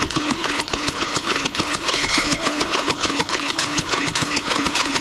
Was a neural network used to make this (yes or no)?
yes